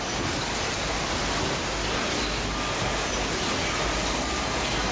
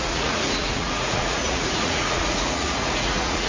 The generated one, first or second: second